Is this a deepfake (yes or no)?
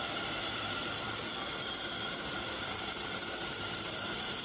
yes